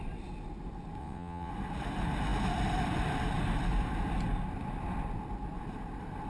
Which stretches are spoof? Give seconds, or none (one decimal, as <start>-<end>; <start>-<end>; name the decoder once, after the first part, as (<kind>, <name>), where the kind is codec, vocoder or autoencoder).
1.0-1.5 (vocoder, WaveNeXt)